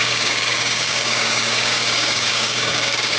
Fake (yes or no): yes